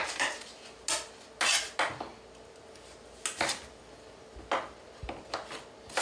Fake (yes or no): no